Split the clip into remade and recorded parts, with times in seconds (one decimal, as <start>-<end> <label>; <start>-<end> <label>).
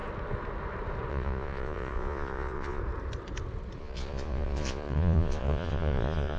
0.0-1.1 recorded; 1.1-2.8 remade; 2.8-3.8 recorded; 3.8-6.4 remade